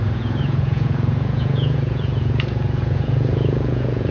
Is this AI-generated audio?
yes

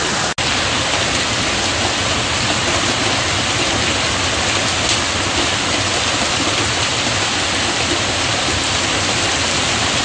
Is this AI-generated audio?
no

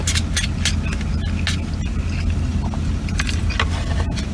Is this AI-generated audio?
no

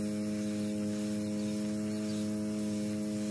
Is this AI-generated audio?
no